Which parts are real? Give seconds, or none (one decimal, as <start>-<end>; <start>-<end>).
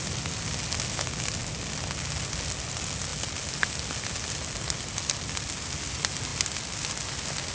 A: 0.0-7.5